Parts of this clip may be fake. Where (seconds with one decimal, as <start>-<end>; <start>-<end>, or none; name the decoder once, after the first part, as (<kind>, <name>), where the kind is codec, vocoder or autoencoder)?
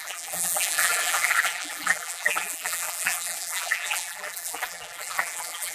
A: 0.0-5.7 (vocoder, BigVGAN v2)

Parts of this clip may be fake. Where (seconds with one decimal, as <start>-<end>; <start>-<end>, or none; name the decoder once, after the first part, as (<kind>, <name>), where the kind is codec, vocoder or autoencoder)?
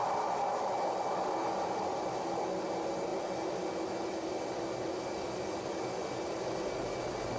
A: none